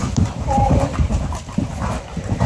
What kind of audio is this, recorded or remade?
remade